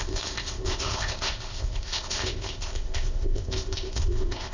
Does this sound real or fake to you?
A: fake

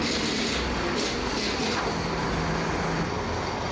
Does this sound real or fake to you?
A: real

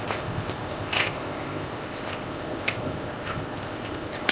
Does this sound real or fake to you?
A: fake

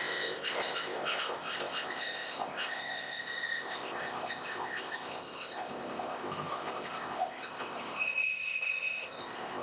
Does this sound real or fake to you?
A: fake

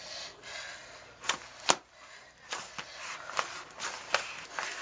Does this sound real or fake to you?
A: real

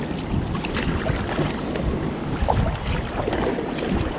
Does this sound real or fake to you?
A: real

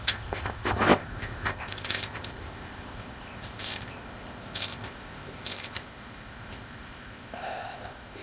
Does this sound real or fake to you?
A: fake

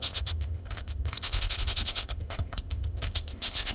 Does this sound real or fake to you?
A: fake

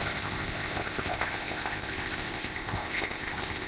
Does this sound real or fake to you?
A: fake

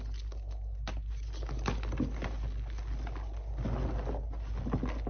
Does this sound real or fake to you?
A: real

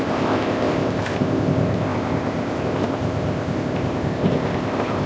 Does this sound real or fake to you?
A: fake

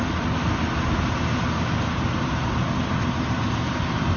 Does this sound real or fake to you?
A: real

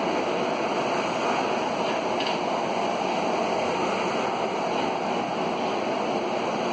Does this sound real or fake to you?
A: real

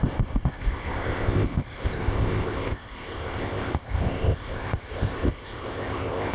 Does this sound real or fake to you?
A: fake